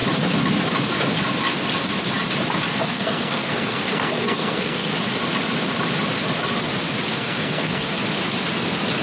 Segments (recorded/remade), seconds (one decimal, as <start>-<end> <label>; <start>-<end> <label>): 0.0-2.7 recorded; 2.7-4.9 remade; 4.9-7.1 recorded; 7.1-8.0 remade; 8.0-9.0 recorded